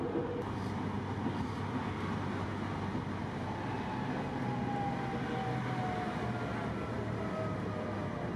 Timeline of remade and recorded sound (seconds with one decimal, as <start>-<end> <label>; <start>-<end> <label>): 0.0-8.4 recorded